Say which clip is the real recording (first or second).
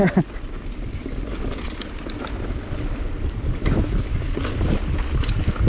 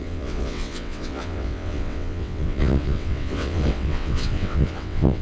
first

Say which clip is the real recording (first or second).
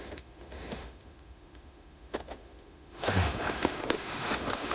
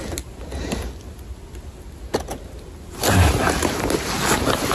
second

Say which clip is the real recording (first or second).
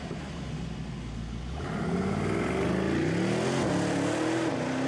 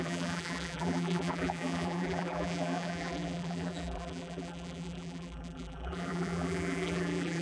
first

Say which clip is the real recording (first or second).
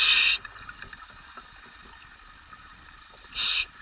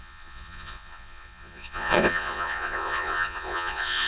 first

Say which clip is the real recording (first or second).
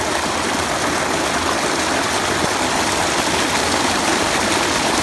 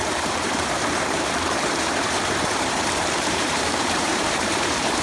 first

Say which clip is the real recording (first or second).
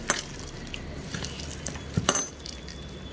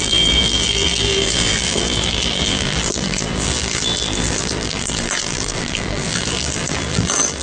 first